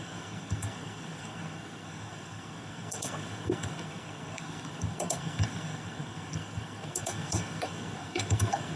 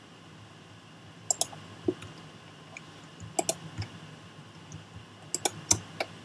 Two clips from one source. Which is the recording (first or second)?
second